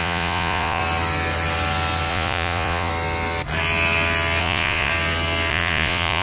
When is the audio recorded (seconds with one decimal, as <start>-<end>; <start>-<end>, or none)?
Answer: 0.8-2.1; 2.9-4.4; 4.9-5.5